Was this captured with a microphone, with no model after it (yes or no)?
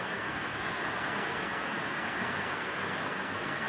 no